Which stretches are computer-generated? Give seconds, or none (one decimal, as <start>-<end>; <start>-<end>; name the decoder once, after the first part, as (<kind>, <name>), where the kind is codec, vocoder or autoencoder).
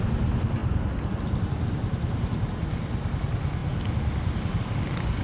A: none